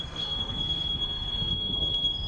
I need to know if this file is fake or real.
fake